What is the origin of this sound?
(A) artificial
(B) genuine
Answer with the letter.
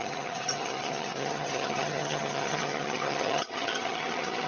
A